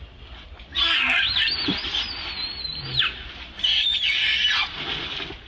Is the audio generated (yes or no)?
no